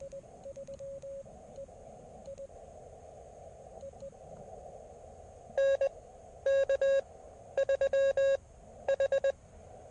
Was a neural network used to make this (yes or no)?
no